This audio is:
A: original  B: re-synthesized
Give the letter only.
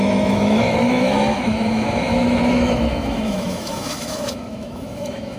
B